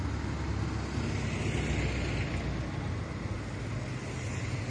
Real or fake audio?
real